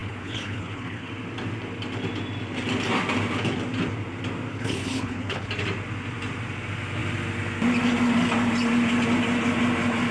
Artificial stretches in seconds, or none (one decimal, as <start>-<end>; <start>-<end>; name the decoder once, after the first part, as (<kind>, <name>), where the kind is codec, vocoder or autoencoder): 0.0-1.1 (codec, HILCodec); 4.5-5.5